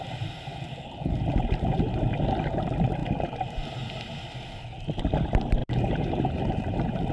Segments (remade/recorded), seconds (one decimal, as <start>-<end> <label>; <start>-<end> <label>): 0.0-5.6 recorded; 5.6-7.1 remade